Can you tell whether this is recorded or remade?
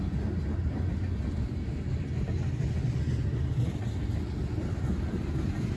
recorded